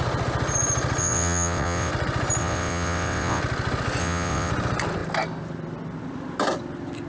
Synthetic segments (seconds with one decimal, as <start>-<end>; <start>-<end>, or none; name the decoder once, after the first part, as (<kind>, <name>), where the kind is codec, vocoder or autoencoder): 1.0-1.9 (vocoder, WaveNeXt); 2.4-3.4; 4.0-4.5

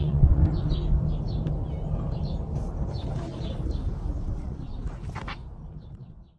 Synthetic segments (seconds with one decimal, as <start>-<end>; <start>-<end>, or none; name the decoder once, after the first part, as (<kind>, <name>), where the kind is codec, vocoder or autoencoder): 0.0-0.4 (vocoder, WaveNeXt); 4.2-4.8; 5.7-6.4

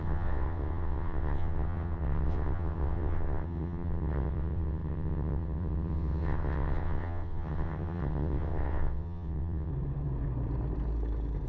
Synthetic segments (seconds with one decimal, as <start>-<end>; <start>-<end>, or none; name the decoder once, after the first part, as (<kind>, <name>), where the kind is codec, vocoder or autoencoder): 0.0-9.7 (vocoder, WaveNeXt)

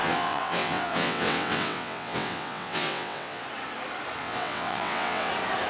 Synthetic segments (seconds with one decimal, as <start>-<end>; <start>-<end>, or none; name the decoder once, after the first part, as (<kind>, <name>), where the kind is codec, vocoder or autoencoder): 0.0-3.4 (vocoder, WaveNeXt); 4.2-5.3

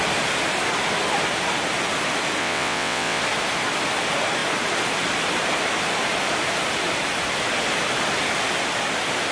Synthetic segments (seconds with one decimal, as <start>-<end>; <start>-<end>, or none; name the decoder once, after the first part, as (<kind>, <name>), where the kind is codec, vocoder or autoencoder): 2.4-3.2 (vocoder, WaveNeXt)

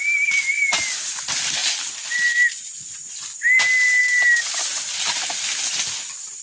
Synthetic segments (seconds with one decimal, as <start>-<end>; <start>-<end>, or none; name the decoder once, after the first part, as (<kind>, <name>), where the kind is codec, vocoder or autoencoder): none